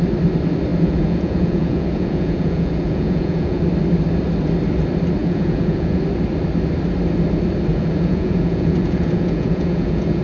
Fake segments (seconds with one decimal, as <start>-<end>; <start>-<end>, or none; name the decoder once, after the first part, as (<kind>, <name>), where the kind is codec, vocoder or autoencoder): 0.7-3.6 (vocoder, Vocos); 5.2-6.0; 7.7-10.2